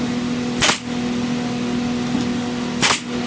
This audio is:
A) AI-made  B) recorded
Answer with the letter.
B